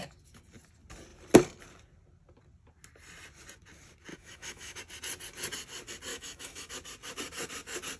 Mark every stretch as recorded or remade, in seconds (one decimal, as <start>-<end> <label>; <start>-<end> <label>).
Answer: 0.0-4.1 recorded; 4.1-4.8 remade; 4.8-6.1 recorded; 6.1-6.7 remade; 6.7-8.0 recorded